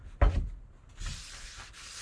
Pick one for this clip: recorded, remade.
recorded